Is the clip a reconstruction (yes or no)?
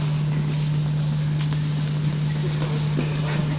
no